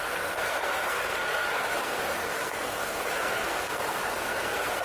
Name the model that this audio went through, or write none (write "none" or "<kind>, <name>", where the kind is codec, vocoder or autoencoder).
codec, SNAC